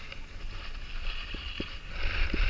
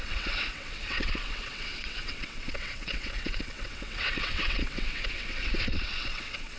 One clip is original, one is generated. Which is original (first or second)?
first